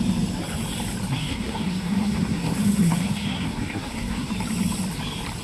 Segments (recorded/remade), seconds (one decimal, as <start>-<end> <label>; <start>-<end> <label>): 0.0-1.1 recorded; 1.1-4.3 remade; 4.3-5.4 recorded